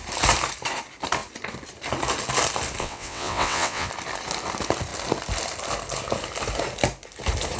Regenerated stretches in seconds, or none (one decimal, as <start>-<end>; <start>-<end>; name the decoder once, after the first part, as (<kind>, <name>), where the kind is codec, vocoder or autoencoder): 2.8-3.9 (vocoder, WaveNeXt)